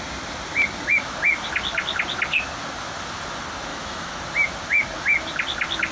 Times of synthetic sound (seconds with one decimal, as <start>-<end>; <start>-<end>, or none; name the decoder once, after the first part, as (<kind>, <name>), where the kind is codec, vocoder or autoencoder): 3.7-4.2 (autoencoder, DAC-VAE)